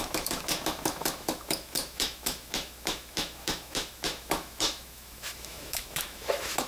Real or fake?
fake